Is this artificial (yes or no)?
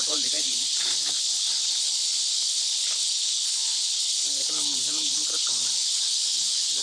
yes